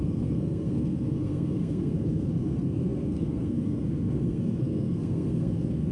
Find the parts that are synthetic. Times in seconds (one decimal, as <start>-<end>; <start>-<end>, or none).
0.0-5.9